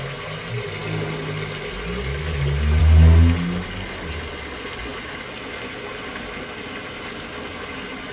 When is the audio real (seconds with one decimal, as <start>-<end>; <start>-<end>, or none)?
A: 0.0-8.1